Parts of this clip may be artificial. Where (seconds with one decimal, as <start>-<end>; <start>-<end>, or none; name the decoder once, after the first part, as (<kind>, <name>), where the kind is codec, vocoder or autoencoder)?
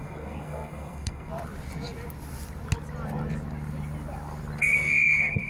0.0-1.3 (codec, SNAC); 4.6-5.5